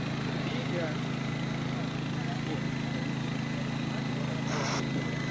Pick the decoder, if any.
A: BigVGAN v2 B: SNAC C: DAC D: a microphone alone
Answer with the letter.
D